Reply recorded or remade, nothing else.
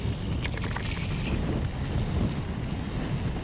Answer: recorded